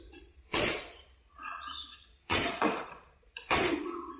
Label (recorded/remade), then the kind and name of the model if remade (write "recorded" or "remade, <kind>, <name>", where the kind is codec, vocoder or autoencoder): remade, vocoder, Vocos